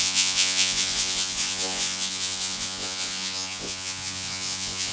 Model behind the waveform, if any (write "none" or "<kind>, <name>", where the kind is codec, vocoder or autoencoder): vocoder, Vocos